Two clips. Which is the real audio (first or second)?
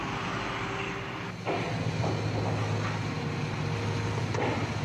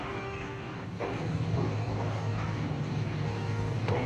first